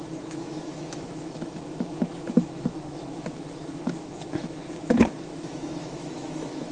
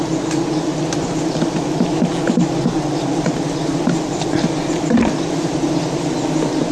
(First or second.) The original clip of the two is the second